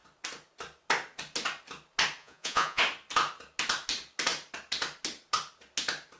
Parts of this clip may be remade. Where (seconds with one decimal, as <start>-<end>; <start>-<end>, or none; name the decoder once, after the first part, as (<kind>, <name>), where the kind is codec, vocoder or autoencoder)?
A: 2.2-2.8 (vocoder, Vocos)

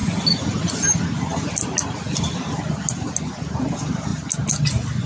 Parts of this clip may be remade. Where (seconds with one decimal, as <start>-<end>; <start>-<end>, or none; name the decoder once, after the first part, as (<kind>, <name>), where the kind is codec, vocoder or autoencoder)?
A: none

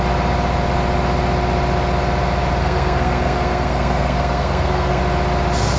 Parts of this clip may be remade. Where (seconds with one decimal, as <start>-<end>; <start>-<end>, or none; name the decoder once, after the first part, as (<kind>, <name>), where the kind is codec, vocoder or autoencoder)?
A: 2.6-5.0 (codec, SNAC)

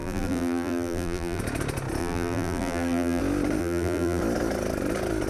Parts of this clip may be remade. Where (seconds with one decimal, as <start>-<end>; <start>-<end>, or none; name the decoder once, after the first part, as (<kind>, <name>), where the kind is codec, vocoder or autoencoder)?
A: 0.0-1.4 (vocoder, BigVGAN v2); 2.0-3.2; 3.6-4.2